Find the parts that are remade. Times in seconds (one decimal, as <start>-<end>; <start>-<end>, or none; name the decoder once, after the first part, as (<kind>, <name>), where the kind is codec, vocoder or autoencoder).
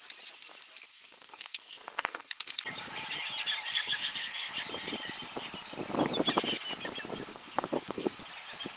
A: 0.9-2.6 (codec, SNAC); 3.7-4.5; 7.3-8.2